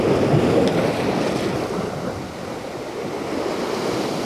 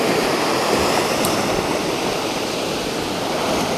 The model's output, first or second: second